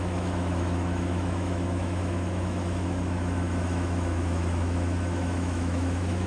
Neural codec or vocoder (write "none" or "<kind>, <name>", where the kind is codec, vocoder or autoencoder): autoencoder, DAC-VAE